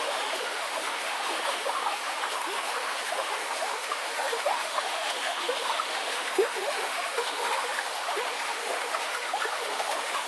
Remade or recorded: remade